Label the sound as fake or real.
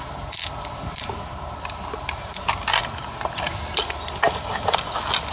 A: real